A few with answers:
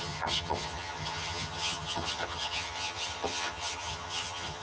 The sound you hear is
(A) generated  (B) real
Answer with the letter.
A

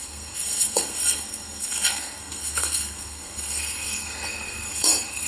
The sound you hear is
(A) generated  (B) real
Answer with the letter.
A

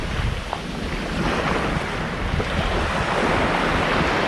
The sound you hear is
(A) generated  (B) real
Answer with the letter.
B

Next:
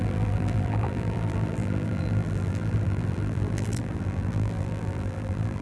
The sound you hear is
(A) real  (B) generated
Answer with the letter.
B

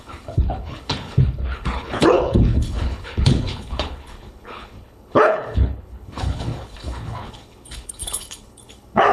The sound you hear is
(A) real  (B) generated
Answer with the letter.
B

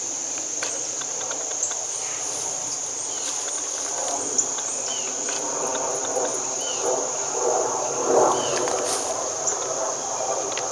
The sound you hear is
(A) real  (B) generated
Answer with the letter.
A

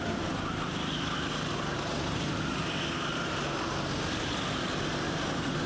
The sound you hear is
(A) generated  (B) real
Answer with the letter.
B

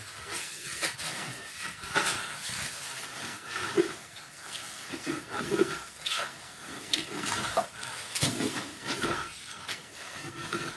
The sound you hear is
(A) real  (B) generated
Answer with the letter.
B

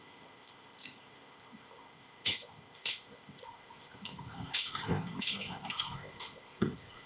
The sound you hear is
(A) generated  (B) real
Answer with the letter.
A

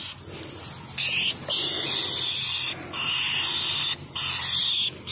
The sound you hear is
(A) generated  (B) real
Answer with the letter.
B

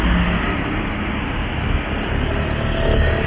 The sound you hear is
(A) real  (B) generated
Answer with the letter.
A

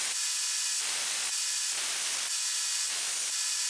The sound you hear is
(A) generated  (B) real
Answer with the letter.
B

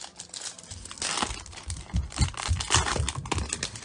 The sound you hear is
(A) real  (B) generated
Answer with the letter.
A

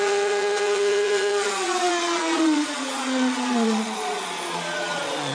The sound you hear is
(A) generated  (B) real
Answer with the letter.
A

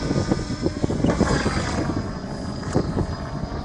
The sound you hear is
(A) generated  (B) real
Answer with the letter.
A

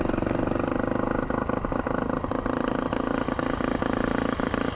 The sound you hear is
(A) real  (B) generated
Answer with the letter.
A